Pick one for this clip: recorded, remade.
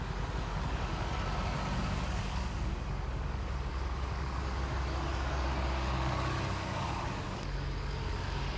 remade